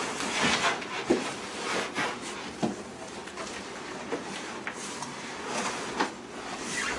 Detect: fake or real real